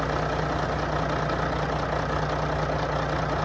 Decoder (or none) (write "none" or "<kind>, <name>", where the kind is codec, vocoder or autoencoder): none